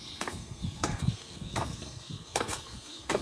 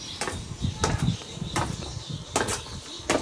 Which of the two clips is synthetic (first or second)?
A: first